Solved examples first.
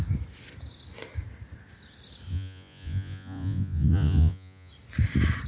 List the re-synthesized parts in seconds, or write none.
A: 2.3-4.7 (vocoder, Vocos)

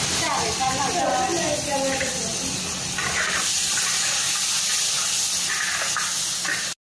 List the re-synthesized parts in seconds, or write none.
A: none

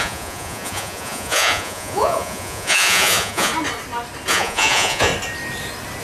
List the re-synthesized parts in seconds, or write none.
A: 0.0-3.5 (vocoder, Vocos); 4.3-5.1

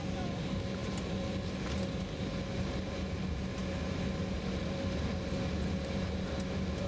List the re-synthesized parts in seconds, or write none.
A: none

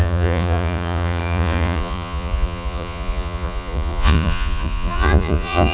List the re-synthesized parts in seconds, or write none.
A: 0.0-5.7 (vocoder, Vocos)

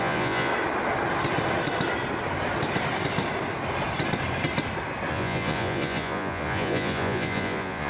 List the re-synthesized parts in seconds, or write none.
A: 0.0-0.5 (vocoder, Vocos); 5.1-7.9

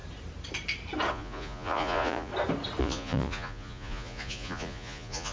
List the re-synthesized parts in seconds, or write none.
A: 1.1-2.3 (vocoder, Vocos); 2.8-5.3